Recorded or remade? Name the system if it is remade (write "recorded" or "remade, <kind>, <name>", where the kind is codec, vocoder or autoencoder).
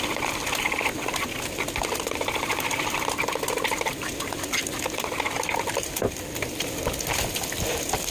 recorded